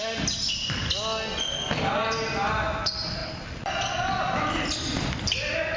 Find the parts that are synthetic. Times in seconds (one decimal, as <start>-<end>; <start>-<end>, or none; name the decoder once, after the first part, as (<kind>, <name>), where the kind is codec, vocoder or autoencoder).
none